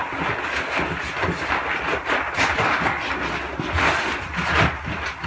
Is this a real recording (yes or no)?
yes